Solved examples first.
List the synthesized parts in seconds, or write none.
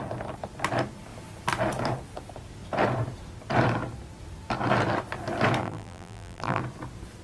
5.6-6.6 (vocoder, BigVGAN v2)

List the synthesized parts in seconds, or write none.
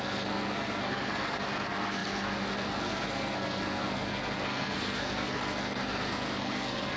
0.0-7.0 (codec, SNAC)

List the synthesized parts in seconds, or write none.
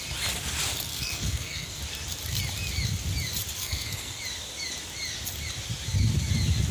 0.9-1.8 (codec, SNAC); 3.6-4.2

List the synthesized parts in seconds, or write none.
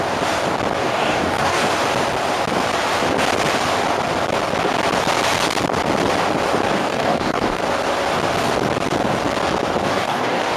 0.8-1.7 (codec, DAC); 6.8-7.6; 9.9-10.6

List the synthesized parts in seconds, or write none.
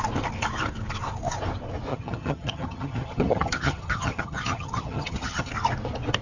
1.9-5.5 (vocoder, HiFi-GAN)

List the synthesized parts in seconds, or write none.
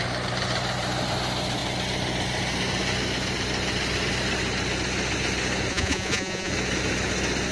5.7-6.5 (vocoder, Vocos)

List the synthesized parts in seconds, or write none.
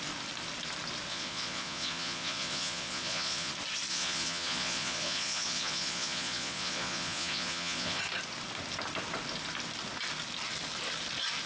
1.1-3.5 (vocoder, Vocos); 3.9-8.0